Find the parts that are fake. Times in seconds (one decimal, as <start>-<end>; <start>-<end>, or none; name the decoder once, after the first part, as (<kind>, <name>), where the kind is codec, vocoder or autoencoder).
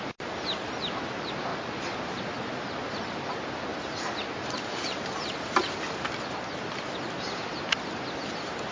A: none